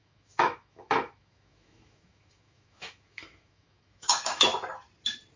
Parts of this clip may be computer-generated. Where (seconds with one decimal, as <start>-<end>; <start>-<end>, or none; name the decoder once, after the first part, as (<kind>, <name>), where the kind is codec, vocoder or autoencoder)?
0.0-4.5 (autoencoder, DAC-VAE)